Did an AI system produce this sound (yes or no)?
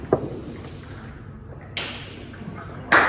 no